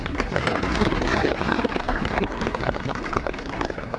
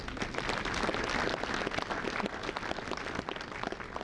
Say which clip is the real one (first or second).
second